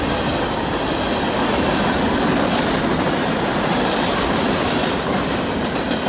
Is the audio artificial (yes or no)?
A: no